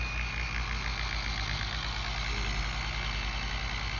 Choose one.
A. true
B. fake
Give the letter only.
A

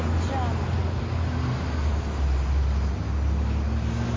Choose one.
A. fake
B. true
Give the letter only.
B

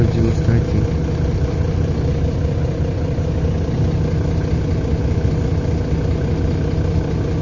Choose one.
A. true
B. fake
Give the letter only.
A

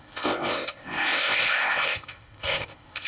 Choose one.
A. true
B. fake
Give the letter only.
B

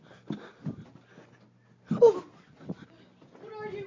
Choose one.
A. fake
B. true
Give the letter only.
B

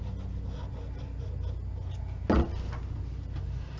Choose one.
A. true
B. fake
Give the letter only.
A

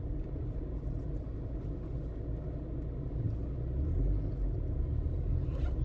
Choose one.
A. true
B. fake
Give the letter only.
A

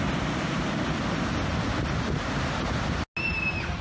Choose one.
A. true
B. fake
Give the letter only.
A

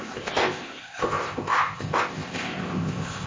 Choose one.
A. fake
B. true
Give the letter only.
A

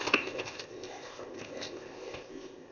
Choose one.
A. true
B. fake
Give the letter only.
B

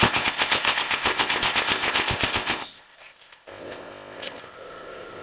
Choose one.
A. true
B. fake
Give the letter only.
B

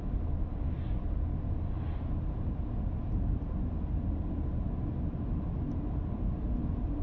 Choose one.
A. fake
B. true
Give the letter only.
B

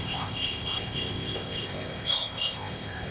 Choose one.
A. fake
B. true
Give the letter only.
A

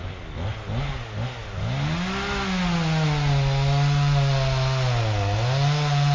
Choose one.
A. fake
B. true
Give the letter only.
B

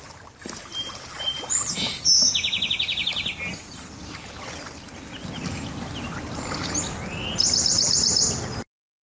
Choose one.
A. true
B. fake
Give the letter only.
A